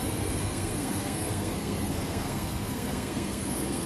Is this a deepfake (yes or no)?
yes